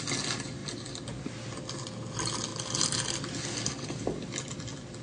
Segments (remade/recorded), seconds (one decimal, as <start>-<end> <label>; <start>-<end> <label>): 0.0-5.0 recorded